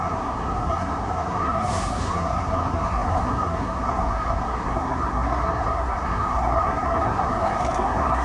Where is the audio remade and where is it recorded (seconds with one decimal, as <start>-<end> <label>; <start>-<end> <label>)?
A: 0.0-8.2 remade